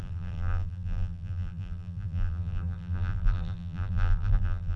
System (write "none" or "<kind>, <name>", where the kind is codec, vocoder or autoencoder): vocoder, BigVGAN v2